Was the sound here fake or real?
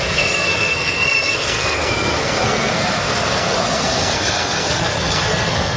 fake